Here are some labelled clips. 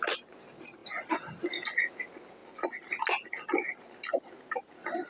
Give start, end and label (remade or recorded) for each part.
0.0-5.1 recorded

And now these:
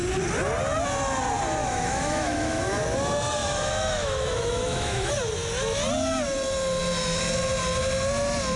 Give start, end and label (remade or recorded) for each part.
0.0-1.6 recorded; 1.6-2.8 remade; 2.8-3.4 recorded; 3.4-5.1 remade; 5.1-8.6 recorded

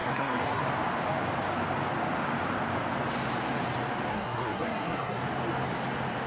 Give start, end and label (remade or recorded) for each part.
0.0-0.6 remade; 0.6-4.1 recorded; 4.1-5.2 remade; 5.2-6.3 recorded

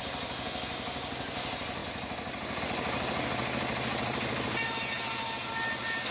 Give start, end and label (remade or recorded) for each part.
0.0-6.1 recorded

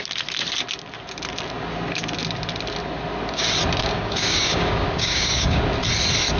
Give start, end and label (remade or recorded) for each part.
0.0-3.8 recorded; 3.8-5.6 remade; 5.6-6.4 recorded

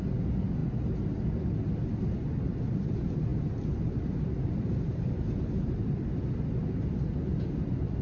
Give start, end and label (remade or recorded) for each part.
0.0-8.0 recorded

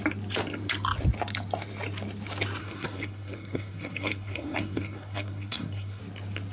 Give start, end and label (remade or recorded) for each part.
0.0-2.6 recorded; 2.6-6.0 remade; 6.0-6.5 recorded

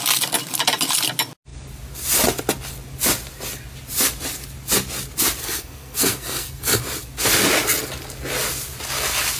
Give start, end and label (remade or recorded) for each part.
0.0-5.4 recorded; 5.4-6.8 remade; 6.8-9.4 recorded